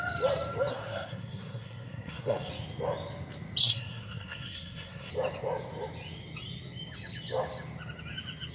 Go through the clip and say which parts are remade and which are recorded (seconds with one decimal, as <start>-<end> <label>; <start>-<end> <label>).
0.0-0.7 recorded; 0.7-2.5 remade; 2.5-3.6 recorded; 3.6-5.1 remade; 5.1-8.5 recorded